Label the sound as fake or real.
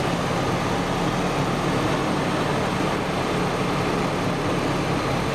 real